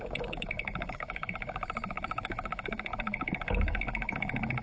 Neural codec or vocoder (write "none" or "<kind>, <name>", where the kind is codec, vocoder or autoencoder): codec, DAC